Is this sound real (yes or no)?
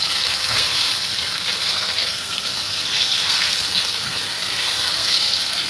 no